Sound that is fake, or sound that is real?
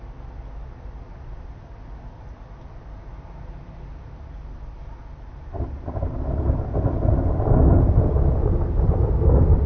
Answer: real